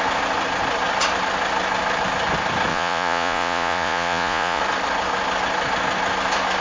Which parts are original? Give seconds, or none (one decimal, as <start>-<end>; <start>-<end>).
0.0-2.7; 4.6-6.6